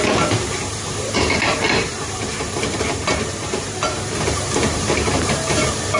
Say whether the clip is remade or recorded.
remade